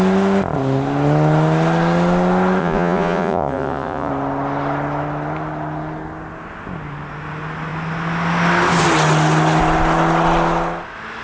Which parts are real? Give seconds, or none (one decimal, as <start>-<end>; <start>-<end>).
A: 0.0-2.6; 4.1-11.2